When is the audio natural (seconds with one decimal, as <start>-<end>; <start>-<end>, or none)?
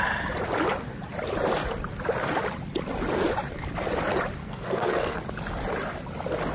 0.0-4.4; 5.2-6.5